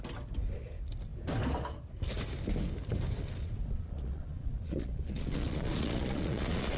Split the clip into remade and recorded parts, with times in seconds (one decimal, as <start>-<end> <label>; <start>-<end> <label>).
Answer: 0.0-3.4 recorded; 3.4-6.8 remade